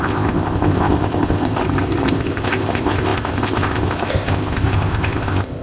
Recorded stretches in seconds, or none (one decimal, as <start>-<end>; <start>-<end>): 1.6-2.1